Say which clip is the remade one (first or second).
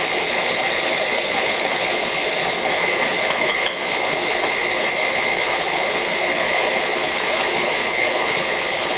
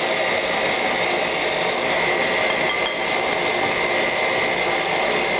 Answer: first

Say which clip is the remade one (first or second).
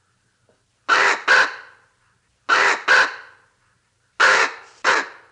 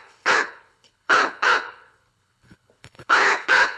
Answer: second